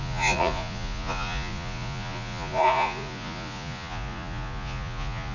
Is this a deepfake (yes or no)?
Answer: yes